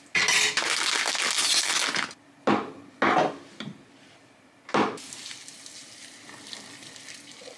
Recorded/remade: recorded